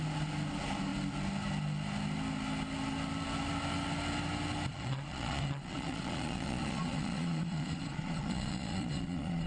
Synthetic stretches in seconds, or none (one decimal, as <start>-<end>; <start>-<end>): 4.7-9.5

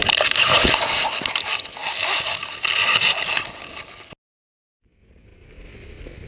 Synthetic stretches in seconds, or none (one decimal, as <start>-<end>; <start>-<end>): none

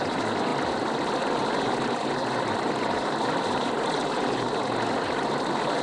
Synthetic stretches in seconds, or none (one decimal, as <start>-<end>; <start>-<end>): none

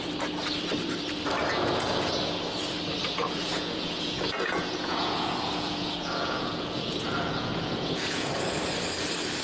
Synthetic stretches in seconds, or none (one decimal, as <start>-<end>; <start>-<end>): 1.4-2.1; 3.2-8.3

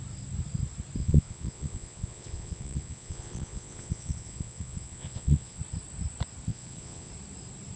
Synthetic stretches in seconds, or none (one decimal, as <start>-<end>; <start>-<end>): 1.0-5.6; 6.5-7.1